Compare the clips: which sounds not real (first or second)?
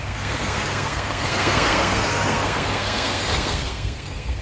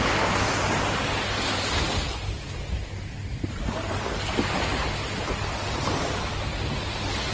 first